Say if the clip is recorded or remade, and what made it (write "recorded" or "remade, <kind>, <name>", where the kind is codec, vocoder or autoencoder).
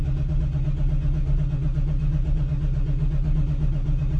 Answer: recorded